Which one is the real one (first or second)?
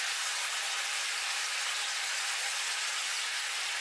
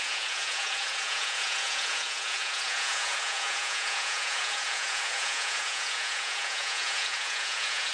first